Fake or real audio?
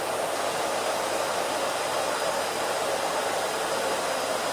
real